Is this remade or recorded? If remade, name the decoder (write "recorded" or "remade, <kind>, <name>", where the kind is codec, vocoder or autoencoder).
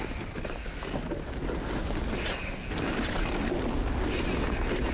recorded